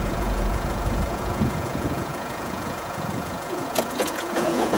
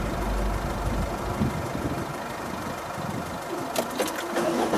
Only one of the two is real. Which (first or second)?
second